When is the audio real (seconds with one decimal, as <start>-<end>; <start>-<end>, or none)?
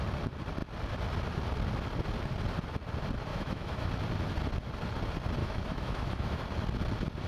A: 0.0-3.3; 3.9-5.4; 6.4-7.3